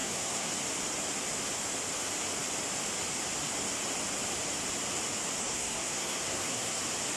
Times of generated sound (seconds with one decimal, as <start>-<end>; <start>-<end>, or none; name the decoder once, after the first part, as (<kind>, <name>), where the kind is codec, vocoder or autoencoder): 0.0-0.5 (codec, SNAC); 5.4-6.8